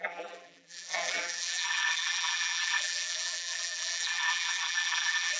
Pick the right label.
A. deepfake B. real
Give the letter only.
A